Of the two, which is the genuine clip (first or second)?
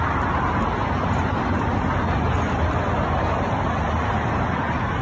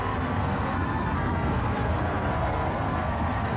first